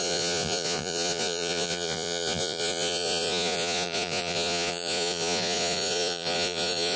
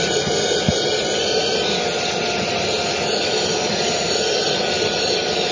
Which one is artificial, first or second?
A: first